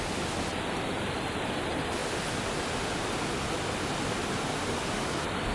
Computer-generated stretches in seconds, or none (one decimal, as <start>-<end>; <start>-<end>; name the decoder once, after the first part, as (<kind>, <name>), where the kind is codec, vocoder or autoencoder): none